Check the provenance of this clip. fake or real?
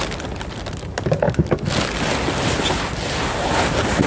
real